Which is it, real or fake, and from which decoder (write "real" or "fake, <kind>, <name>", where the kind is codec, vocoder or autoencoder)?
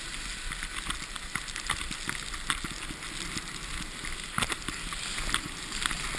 real